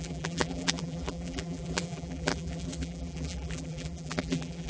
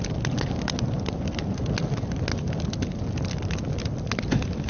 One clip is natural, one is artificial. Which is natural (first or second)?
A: second